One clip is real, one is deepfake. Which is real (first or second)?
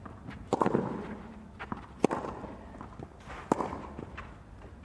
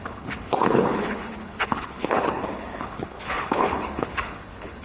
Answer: first